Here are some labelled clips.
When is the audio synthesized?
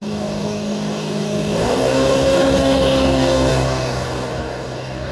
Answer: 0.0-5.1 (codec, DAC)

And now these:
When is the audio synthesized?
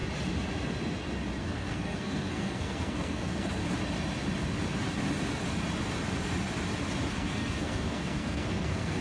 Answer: 1.4-3.6 (codec, SNAC); 7.1-9.0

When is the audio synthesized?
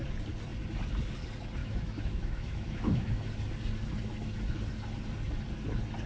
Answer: 1.6-3.3 (autoencoder, DAC-VAE)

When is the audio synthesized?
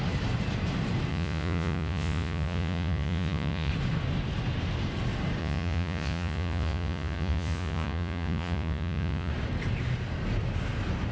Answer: 1.1-3.7 (vocoder, Vocos); 5.4-9.3